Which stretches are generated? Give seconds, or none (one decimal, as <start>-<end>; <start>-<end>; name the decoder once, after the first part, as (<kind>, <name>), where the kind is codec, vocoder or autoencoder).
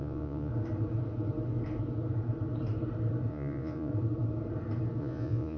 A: 0.0-0.5 (vocoder, Vocos); 3.3-3.9; 5.0-5.6